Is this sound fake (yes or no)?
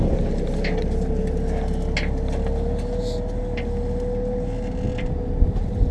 no